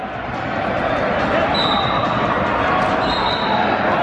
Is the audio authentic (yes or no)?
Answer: yes